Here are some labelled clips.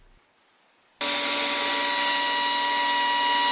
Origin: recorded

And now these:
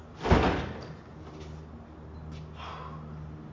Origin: recorded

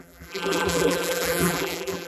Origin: remade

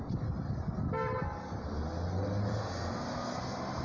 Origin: recorded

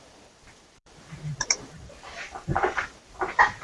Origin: remade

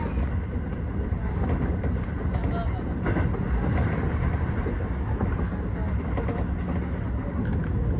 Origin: recorded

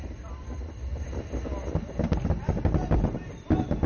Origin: recorded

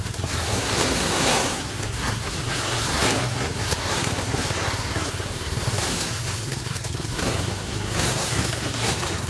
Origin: remade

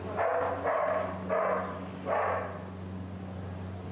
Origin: recorded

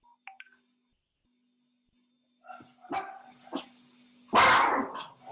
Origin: recorded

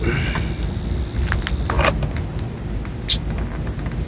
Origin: recorded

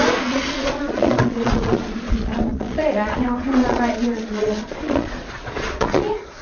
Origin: remade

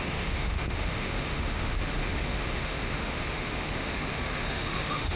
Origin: remade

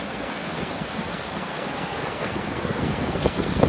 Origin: remade